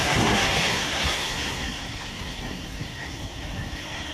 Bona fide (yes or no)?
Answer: no